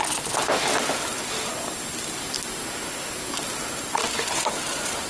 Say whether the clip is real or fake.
real